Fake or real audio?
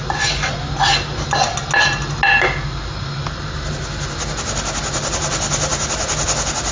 real